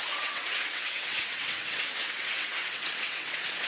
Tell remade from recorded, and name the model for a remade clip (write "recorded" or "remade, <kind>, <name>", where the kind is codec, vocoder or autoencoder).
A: remade, vocoder, WaveNeXt